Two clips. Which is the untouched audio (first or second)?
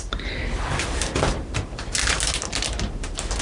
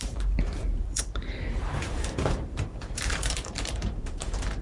first